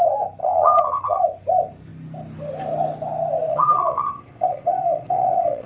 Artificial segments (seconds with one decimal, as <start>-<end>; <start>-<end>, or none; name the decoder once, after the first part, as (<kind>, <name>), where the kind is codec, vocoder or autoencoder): 0.4-1.2 (vocoder, WaveNeXt); 3.5-5.7